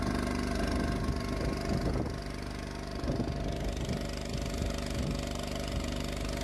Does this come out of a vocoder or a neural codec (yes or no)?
no